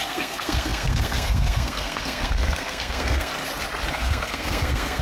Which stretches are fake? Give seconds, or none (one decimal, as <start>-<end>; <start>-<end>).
0.0-3.3; 3.9-5.0